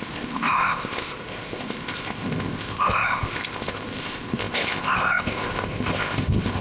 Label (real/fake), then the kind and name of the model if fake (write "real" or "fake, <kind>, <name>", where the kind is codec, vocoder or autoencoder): fake, codec, ZipCodec